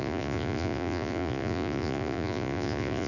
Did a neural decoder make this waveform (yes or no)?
yes